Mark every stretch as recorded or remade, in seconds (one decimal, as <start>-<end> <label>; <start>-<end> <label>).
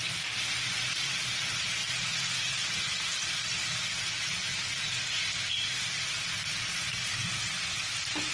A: 0.0-8.3 recorded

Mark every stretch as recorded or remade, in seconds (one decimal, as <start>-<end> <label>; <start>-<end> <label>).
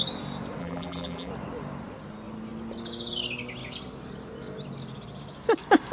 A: 0.0-0.6 recorded; 0.6-1.3 remade; 1.3-5.9 recorded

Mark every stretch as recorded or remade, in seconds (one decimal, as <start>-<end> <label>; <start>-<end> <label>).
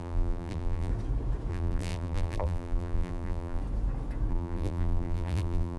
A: 0.0-0.9 remade; 0.9-1.5 recorded; 1.5-3.6 remade; 3.6-4.3 recorded; 4.3-5.8 remade